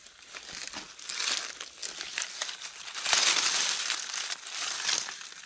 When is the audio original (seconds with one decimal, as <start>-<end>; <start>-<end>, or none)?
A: 0.0-5.5